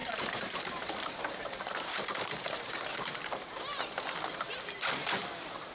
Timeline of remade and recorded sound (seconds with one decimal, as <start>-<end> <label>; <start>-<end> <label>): 0.0-3.2 remade; 3.2-5.7 recorded